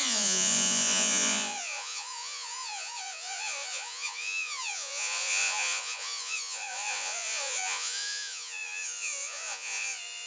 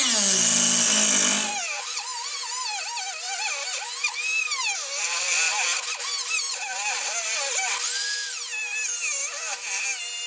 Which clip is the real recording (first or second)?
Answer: second